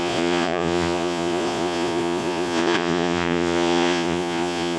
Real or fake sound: fake